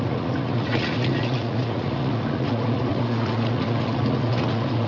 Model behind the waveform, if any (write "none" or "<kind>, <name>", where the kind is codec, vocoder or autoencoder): vocoder, Vocos